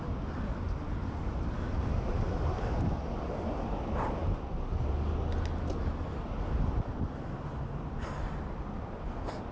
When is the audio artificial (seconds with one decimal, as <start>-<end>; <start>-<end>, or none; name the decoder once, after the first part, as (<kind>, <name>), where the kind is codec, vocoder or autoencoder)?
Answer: none